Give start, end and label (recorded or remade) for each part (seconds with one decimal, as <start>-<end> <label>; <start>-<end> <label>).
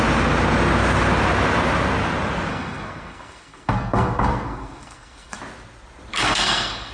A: 0.0-2.5 recorded; 2.5-5.4 remade; 5.4-6.1 recorded; 6.1-6.9 remade